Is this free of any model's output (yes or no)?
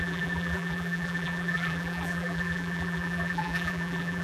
no